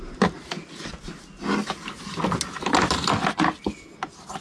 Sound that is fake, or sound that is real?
real